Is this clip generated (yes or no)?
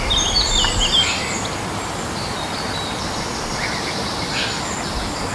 no